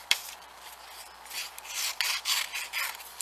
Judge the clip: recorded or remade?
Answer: remade